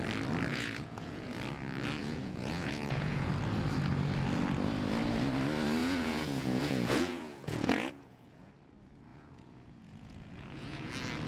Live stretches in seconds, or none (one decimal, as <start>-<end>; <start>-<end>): 0.0-0.5; 1.3-2.0; 3.3-5.8; 8.5-9.1; 10.9-11.3